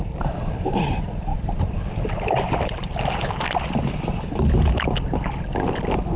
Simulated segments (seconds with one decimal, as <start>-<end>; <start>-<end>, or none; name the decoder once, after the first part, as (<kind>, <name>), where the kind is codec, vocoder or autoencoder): none